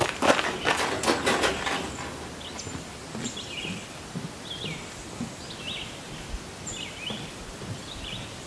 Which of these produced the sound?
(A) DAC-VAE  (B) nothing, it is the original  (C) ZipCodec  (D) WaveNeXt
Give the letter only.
B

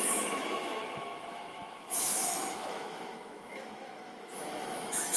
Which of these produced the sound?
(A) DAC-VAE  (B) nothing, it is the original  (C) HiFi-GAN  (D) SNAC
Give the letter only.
A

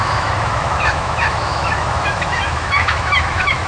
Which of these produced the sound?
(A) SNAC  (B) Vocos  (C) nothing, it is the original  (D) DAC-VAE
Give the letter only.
D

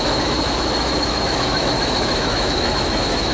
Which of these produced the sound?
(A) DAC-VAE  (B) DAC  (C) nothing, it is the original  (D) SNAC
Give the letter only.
A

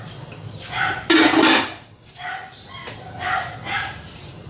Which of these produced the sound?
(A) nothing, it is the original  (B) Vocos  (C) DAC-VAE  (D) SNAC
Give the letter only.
A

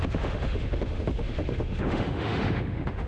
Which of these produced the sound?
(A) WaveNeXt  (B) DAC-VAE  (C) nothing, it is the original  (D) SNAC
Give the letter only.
B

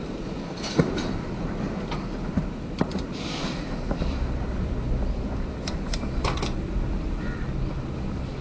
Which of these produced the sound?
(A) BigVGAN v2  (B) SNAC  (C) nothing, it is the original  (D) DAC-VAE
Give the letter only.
C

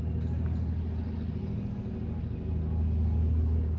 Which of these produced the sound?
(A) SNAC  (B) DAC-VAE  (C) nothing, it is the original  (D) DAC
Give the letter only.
C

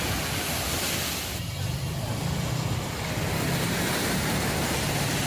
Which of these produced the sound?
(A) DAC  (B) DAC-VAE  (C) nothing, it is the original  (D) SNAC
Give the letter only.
C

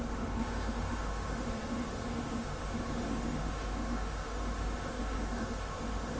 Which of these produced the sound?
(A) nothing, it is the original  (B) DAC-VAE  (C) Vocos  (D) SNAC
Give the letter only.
B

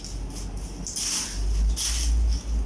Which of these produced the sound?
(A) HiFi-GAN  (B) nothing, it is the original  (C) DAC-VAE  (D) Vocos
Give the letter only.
B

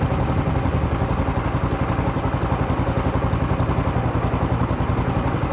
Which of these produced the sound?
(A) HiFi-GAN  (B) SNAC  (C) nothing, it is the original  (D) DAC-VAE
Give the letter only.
C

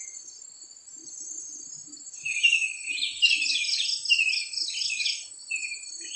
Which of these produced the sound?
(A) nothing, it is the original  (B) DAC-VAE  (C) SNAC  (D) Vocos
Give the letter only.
A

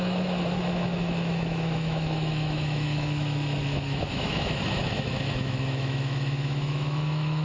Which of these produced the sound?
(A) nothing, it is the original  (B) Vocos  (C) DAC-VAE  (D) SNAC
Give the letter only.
C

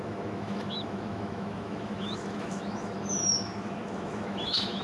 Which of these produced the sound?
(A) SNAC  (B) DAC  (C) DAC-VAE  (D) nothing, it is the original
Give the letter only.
C